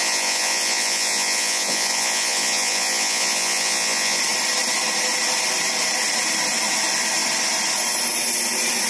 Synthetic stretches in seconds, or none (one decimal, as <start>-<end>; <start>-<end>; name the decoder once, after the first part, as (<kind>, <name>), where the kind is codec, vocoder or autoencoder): 0.0-4.2 (vocoder, Vocos)